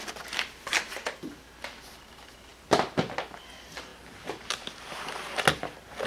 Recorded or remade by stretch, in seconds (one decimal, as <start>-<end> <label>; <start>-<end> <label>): 0.0-6.1 recorded